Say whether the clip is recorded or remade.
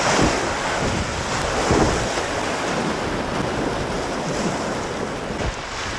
recorded